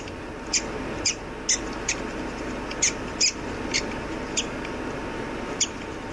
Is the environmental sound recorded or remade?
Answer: recorded